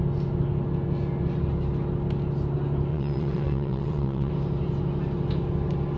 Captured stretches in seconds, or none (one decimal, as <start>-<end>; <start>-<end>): 0.0-2.9; 4.3-6.0